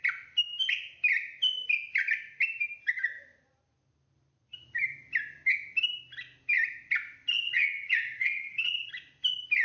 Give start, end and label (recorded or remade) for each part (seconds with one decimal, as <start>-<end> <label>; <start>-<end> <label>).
0.0-7.3 recorded; 7.3-8.9 remade; 8.9-9.6 recorded